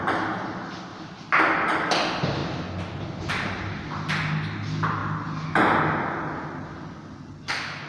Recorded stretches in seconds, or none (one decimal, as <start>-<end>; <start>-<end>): 0.0-7.9